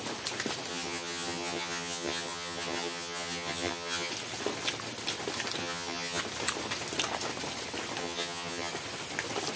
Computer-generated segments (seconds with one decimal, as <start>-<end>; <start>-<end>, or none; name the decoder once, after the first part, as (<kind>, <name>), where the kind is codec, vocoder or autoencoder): 0.7-4.1 (vocoder, HiFi-GAN); 5.6-6.2; 8.0-8.7